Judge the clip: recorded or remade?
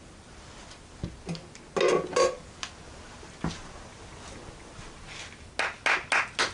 recorded